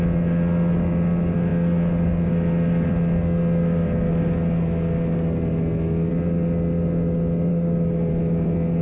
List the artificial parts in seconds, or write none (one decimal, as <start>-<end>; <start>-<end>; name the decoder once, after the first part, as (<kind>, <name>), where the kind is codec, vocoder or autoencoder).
7.5-8.1 (codec, DAC)